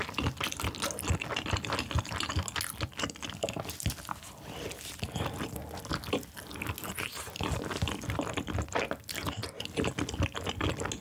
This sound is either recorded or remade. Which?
recorded